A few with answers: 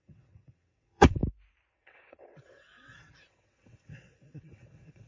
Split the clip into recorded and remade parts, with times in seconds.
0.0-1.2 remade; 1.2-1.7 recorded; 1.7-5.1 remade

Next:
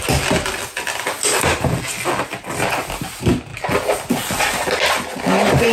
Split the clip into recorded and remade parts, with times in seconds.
0.0-5.7 recorded